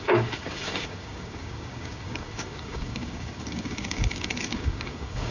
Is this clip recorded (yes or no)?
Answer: no